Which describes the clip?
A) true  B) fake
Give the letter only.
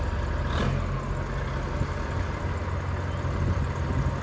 A